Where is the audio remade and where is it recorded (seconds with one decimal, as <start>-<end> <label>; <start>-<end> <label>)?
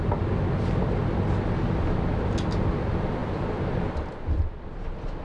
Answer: 0.0-5.2 recorded